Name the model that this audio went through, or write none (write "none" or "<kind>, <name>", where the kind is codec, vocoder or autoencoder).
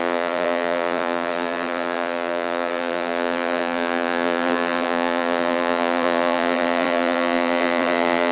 vocoder, BigVGAN v2